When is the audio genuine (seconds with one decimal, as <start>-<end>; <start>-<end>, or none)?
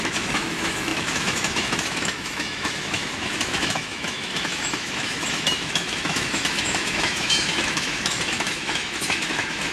none